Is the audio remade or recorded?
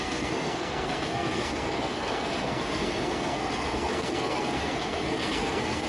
remade